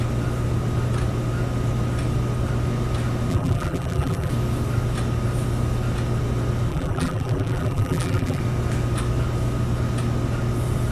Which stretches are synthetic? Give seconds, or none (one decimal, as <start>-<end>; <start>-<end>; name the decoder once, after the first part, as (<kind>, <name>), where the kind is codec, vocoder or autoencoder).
3.3-4.3 (vocoder, BigVGAN v2); 6.7-8.4